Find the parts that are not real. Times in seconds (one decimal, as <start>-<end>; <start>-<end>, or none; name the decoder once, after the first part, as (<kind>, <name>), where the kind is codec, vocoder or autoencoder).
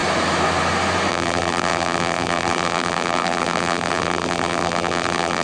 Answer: 1.1-5.4 (vocoder, BigVGAN v2)